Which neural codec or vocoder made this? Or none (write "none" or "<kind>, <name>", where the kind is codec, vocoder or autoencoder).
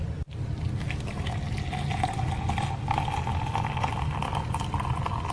none